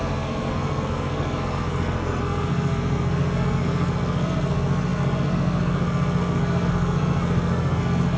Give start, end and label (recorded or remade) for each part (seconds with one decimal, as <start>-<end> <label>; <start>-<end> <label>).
0.0-8.2 remade

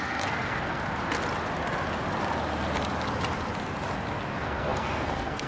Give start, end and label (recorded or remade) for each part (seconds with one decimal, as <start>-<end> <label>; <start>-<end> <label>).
0.0-1.0 remade; 1.0-4.3 recorded; 4.3-5.5 remade

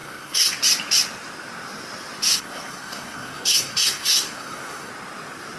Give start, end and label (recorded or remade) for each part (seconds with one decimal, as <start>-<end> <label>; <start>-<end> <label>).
0.0-0.6 remade; 0.6-2.3 recorded; 2.3-4.9 remade; 4.9-5.6 recorded

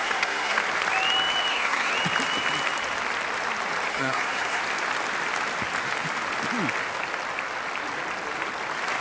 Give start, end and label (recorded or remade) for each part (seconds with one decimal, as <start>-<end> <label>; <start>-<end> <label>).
0.0-0.6 remade; 0.6-1.5 recorded; 1.5-1.9 remade; 1.9-3.9 recorded; 3.9-4.6 remade; 4.6-9.0 recorded

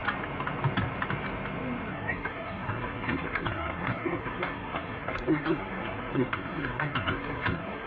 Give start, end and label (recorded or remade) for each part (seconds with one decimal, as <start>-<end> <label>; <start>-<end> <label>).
0.0-1.9 recorded; 1.9-7.9 remade

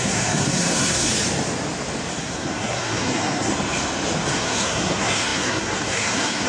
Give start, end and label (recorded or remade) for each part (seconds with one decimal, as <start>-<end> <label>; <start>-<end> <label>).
0.0-1.1 remade; 1.1-2.2 recorded; 2.2-3.5 remade; 3.5-4.3 recorded; 4.3-6.5 remade